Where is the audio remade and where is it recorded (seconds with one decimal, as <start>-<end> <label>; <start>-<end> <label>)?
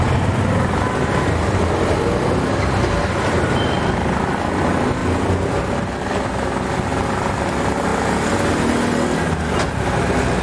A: 0.0-10.4 recorded